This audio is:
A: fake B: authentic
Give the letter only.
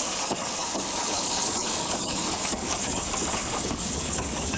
A